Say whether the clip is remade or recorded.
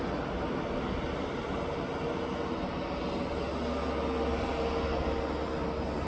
recorded